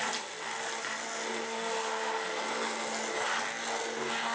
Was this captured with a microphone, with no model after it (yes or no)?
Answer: yes